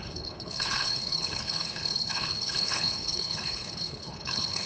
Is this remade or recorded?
remade